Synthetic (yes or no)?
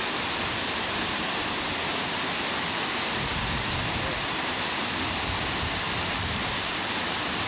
no